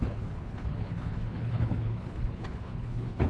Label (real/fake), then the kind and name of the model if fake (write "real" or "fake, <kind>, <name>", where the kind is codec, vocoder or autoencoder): fake, codec, HILCodec